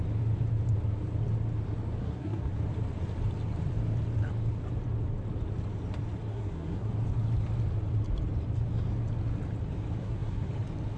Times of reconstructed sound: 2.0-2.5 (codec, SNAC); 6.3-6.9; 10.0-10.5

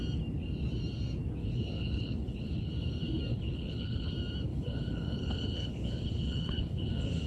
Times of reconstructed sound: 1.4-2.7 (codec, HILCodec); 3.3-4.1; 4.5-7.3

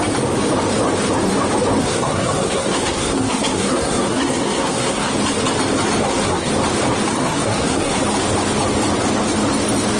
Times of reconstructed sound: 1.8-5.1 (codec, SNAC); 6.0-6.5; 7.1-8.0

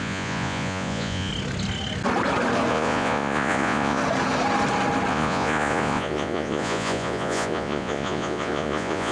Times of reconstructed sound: 0.0-1.3 (vocoder, Vocos); 2.7-4.0; 5.1-9.1

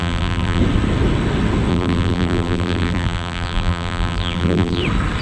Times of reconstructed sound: 0.0-0.6 (vocoder, BigVGAN v2); 1.7-4.8

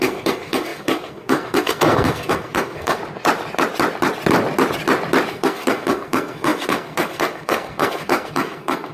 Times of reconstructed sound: 0.0-3.0 (codec, SNAC); 5.3-8.9

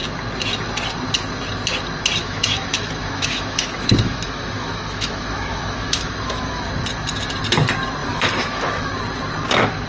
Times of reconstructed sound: 2.2-6.7 (autoencoder, DAC-VAE); 8.0-8.9